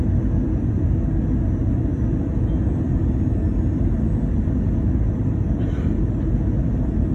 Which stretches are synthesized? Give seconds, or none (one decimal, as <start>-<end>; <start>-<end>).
none